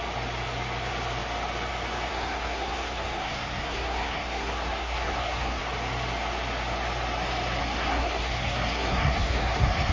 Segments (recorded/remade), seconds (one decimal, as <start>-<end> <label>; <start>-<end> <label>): 0.0-2.1 recorded; 2.1-5.6 remade; 5.6-7.6 recorded; 7.6-9.9 remade

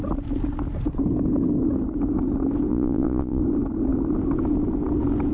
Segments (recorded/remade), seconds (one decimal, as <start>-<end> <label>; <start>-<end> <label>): 0.0-2.7 recorded; 2.7-3.4 remade; 3.4-5.3 recorded